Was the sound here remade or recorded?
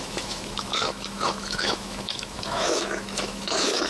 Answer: remade